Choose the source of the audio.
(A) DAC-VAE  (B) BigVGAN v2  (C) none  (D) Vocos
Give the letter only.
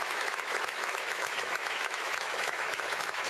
A